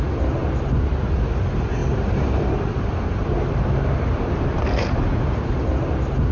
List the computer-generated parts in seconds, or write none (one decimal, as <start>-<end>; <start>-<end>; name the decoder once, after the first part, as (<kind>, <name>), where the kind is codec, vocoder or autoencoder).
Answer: 1.8-5.6 (vocoder, BigVGAN v2)